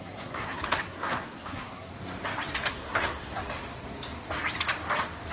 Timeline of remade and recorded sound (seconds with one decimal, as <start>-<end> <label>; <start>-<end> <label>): 0.0-1.9 remade; 1.9-2.7 recorded; 2.7-3.4 remade; 3.4-5.3 recorded